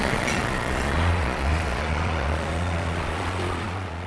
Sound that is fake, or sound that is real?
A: fake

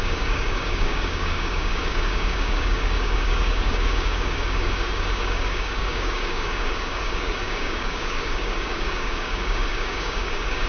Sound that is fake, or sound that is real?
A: fake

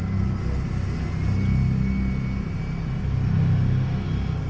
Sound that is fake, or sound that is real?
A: real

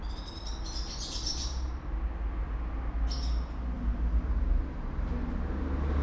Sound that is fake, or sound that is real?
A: real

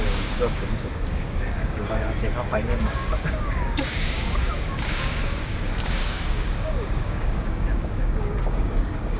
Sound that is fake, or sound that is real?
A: fake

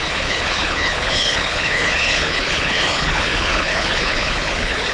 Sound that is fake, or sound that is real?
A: fake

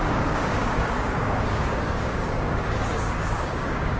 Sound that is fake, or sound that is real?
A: fake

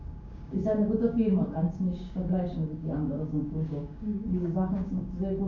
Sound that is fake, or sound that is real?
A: fake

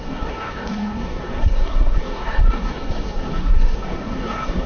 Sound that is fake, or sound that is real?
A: fake